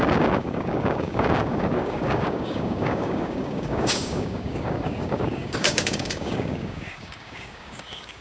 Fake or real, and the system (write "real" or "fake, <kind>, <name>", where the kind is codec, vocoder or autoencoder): fake, codec, DAC